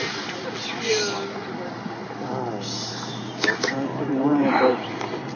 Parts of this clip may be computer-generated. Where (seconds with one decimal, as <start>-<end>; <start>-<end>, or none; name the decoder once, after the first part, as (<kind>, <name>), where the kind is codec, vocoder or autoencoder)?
none